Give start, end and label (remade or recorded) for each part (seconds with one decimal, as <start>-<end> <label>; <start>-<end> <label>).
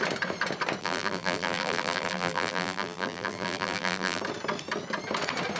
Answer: 0.0-0.8 recorded; 0.8-4.2 remade; 4.2-5.6 recorded